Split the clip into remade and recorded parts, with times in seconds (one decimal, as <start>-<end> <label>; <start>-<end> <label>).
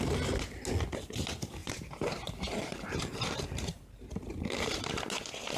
0.0-1.6 recorded; 1.6-5.0 remade; 5.0-5.6 recorded